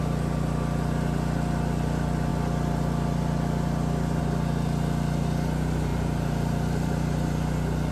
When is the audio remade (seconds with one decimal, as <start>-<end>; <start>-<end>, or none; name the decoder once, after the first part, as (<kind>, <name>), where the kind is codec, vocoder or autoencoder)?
5.9-6.9 (vocoder, BigVGAN v2)